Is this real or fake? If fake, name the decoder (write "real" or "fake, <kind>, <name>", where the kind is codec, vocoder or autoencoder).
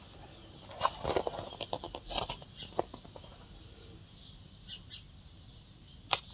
real